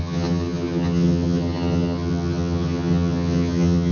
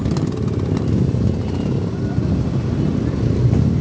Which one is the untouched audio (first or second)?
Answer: second